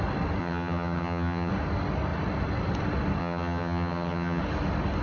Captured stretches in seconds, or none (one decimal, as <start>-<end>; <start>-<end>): 0.0-0.4; 1.5-3.2; 4.4-5.0